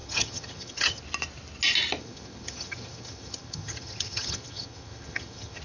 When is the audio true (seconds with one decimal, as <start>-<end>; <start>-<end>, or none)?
1.0-2.0